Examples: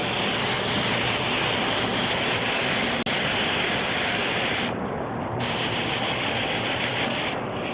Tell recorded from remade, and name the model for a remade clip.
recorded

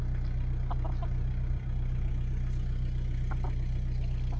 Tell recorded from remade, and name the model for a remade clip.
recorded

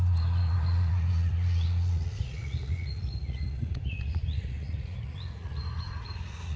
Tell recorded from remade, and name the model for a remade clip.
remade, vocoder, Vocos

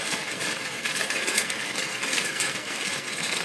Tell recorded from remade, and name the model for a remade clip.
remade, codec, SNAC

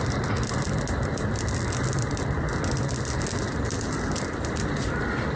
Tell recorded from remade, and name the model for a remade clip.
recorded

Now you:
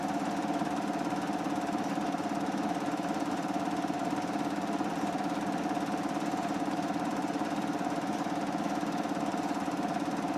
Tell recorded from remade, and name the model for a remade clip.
recorded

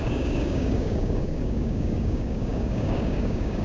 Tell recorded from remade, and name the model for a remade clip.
remade, codec, DAC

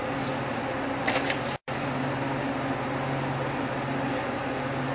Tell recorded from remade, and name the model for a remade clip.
recorded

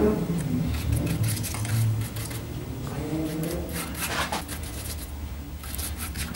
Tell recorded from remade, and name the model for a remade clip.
recorded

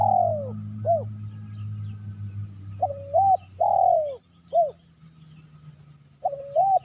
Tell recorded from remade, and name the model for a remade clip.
recorded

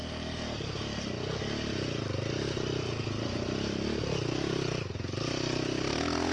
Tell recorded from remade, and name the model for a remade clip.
recorded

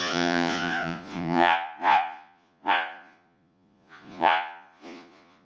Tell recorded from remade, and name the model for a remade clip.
remade, vocoder, Vocos